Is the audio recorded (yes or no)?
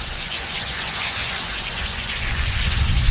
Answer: no